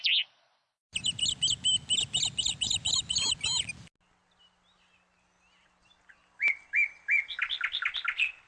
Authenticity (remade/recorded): recorded